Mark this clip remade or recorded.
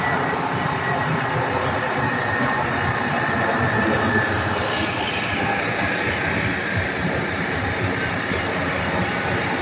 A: recorded